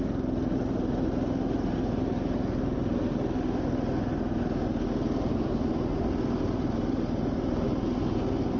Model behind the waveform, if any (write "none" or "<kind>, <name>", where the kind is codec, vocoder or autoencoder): none